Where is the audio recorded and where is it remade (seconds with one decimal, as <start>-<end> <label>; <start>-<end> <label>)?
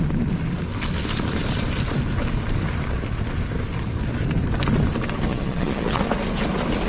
0.0-5.3 recorded; 5.3-6.0 remade; 6.0-6.9 recorded